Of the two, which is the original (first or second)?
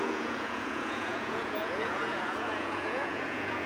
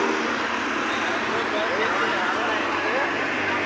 second